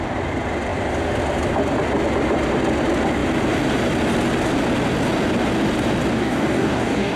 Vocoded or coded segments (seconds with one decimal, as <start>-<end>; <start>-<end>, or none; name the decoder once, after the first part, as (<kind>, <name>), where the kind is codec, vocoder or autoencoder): 6.2-7.2 (codec, DAC)